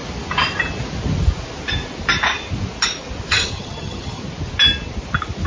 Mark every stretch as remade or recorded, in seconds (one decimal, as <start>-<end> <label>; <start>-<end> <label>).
0.0-3.3 recorded; 3.3-4.2 remade; 4.2-5.5 recorded